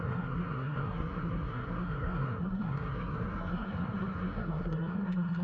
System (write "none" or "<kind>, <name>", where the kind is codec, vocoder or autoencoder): codec, SNAC